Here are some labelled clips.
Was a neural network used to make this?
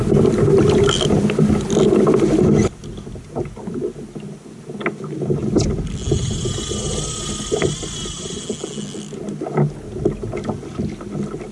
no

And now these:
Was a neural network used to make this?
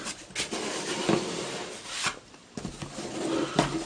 no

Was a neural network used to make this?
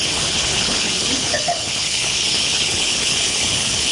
yes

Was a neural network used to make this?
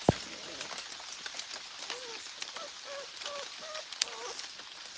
no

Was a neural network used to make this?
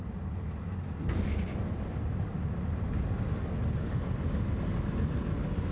no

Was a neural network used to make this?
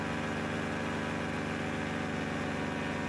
no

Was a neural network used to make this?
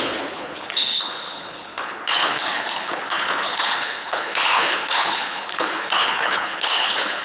yes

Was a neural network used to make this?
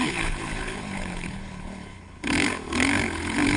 yes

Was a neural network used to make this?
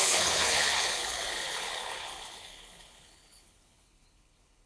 yes